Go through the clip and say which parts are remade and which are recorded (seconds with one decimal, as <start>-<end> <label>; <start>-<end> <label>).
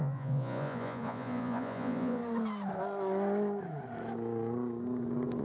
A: 0.0-2.2 remade; 2.2-5.4 recorded